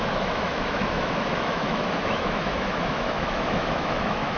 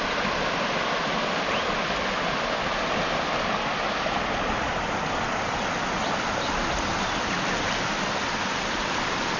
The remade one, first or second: first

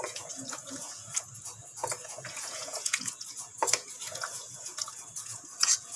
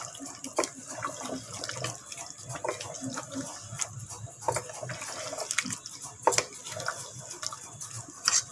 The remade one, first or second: first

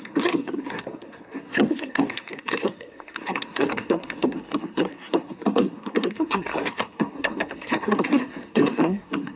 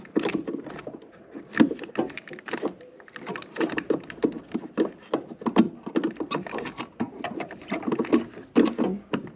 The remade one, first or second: first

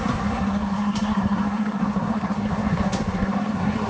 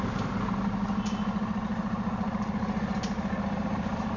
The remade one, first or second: first